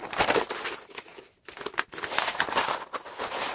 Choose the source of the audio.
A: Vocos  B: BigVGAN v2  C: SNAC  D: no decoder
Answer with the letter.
D